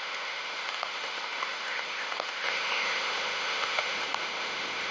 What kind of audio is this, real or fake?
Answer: fake